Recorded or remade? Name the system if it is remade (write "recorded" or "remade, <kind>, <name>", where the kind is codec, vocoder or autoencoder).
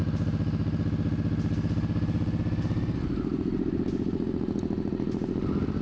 recorded